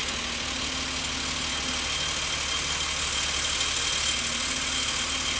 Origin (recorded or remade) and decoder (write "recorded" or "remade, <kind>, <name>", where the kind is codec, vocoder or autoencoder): recorded